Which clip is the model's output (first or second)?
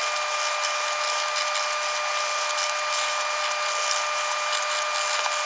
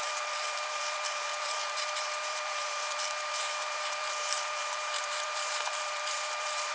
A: second